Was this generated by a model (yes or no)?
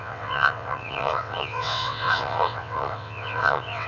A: yes